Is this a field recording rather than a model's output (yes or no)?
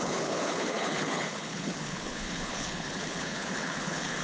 no